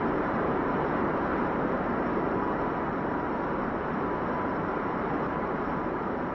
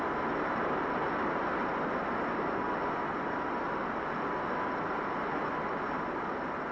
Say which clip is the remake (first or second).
first